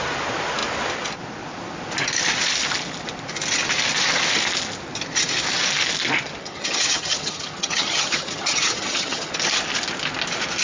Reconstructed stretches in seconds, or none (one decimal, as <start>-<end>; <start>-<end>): 6.4-9.3